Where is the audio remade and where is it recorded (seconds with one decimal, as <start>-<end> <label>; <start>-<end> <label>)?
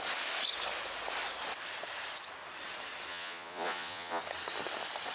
0.0-3.1 recorded; 3.1-4.2 remade; 4.2-5.1 recorded